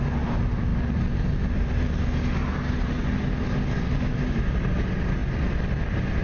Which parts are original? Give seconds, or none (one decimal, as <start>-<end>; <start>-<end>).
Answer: 0.0-6.2